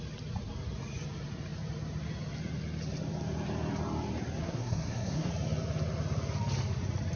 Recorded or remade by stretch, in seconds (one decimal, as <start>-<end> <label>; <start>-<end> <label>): 0.0-4.4 recorded; 4.4-5.3 remade; 5.3-7.2 recorded